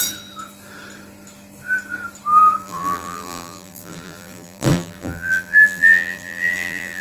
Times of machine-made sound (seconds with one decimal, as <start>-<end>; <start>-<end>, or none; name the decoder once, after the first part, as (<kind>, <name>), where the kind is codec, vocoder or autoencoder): 2.6-7.0 (vocoder, BigVGAN v2)